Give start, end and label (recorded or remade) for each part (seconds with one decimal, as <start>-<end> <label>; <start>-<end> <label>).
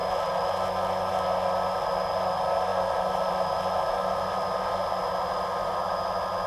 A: 0.0-6.5 recorded